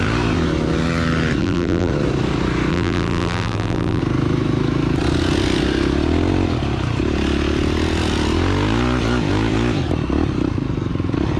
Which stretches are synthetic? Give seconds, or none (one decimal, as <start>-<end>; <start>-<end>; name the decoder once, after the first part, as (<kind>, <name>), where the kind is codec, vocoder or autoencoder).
1.4-1.9 (vocoder, BigVGAN v2); 2.7-4.0

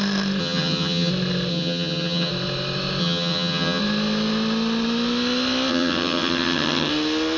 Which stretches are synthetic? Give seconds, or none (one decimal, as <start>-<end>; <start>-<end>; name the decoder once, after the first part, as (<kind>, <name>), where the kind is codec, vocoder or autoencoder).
0.4-1.1 (vocoder, HiFi-GAN); 1.5-2.3; 3.0-3.8; 5.7-6.9

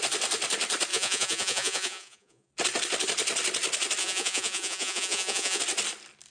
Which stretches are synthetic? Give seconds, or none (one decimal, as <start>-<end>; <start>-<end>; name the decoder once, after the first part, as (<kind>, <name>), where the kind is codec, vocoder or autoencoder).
0.9-2.5 (vocoder, Vocos); 4.0-5.6

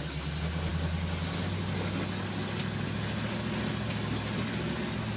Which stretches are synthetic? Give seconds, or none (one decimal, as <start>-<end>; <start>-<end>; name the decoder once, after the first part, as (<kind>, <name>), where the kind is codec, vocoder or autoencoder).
none

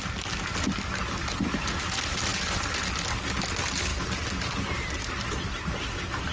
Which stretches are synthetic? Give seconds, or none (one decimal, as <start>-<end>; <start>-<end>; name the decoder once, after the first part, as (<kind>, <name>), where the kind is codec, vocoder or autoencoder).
none

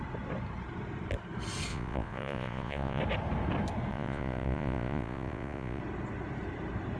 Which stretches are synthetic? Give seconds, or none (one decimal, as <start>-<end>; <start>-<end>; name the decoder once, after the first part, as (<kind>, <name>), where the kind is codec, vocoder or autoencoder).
1.7-3.0 (vocoder, Vocos); 3.9-5.8

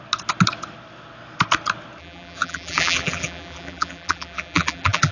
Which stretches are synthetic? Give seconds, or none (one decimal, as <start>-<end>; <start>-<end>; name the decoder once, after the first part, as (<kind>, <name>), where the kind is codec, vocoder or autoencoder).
2.0-5.1 (vocoder, BigVGAN v2)

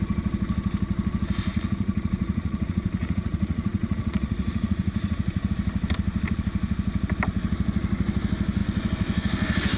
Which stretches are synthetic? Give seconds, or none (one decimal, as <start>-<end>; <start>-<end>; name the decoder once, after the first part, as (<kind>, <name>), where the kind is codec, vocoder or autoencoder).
1.5-5.5 (vocoder, Vocos)